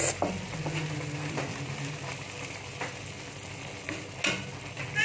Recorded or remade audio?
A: recorded